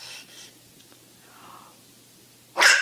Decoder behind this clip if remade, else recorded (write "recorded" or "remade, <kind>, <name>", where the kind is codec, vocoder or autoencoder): recorded